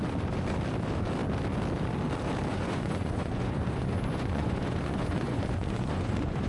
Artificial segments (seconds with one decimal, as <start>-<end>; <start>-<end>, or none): 2.5-6.5